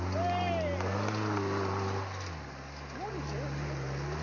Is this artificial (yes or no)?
no